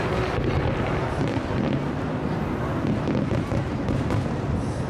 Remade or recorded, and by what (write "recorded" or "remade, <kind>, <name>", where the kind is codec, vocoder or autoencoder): recorded